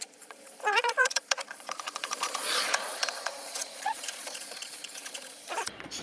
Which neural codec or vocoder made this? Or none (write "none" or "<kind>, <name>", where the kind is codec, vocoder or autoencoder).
vocoder, Vocos